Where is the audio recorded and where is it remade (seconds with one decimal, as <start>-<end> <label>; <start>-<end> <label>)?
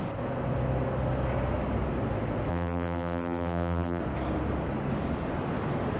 0.0-2.5 recorded; 2.5-4.0 remade; 4.0-6.0 recorded